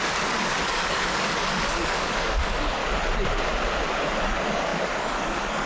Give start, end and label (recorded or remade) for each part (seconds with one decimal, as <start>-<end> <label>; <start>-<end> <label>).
0.0-2.8 remade; 2.8-4.2 recorded; 4.2-5.7 remade